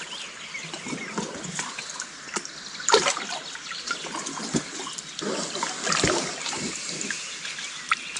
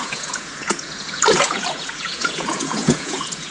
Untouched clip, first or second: first